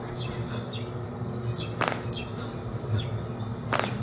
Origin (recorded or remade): recorded